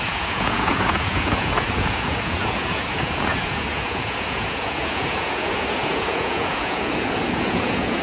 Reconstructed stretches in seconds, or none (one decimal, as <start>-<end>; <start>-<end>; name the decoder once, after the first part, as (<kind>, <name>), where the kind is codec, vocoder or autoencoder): 0.0-8.0 (vocoder, Vocos)